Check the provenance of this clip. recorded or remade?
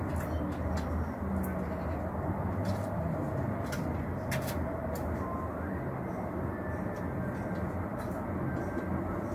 recorded